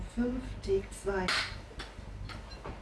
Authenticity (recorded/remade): recorded